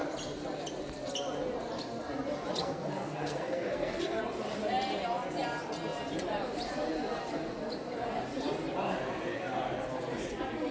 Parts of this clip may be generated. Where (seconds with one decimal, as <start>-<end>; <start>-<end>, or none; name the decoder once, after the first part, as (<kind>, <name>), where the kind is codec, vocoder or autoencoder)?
2.6-4.2 (codec, SNAC)